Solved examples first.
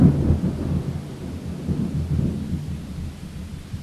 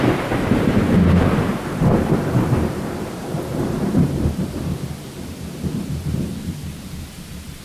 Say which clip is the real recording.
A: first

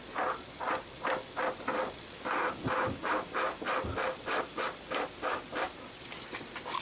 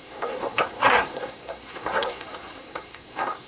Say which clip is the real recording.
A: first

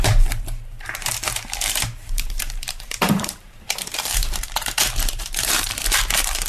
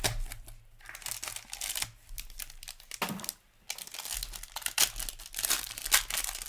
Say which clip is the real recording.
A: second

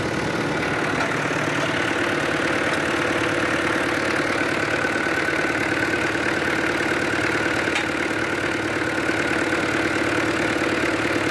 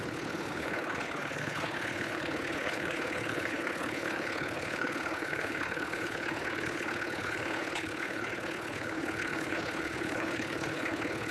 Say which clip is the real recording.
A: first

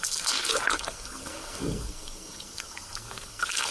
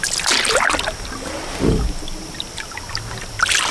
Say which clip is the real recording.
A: second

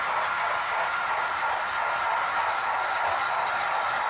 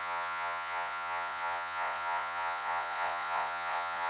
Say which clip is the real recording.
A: first